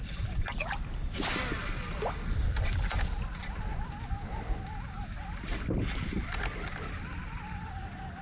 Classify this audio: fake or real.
real